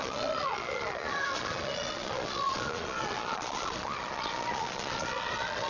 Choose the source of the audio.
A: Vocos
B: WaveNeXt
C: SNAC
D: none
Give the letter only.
A